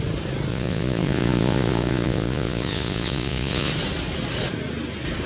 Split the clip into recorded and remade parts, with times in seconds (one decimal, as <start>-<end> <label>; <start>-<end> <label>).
0.0-0.5 recorded; 0.5-3.7 remade; 3.7-5.3 recorded